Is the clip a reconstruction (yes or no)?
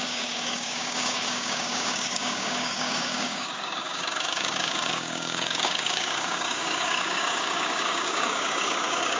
yes